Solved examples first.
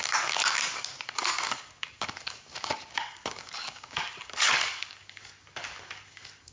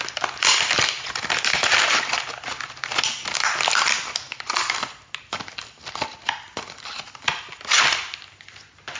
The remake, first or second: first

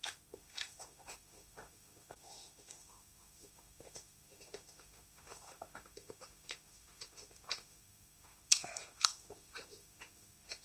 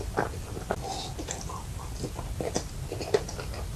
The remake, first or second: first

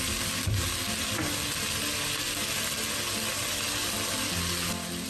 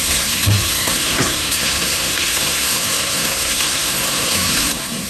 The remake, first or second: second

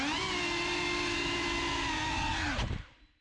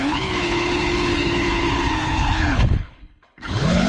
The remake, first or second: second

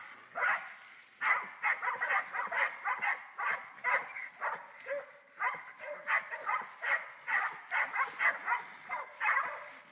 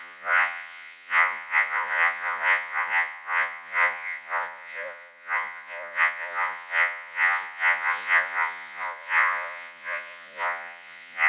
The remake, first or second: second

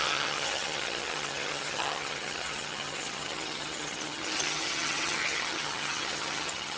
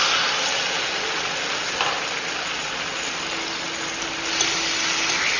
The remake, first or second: first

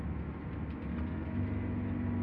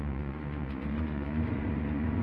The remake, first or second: second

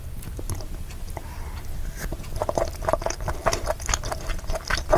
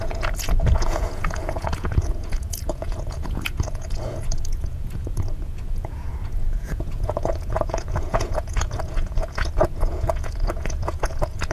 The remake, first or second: second